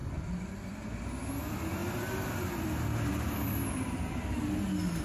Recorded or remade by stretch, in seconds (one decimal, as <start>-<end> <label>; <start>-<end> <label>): 0.0-1.0 remade; 1.0-5.0 recorded